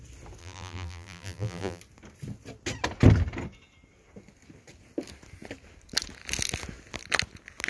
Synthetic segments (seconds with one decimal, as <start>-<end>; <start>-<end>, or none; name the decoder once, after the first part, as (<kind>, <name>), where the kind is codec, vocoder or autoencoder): 0.4-1.8 (vocoder, BigVGAN v2)